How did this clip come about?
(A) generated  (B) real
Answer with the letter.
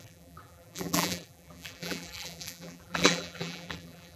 A